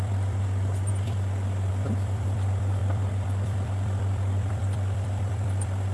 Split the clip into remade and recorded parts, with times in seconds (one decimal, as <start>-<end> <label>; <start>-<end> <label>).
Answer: 0.0-5.9 remade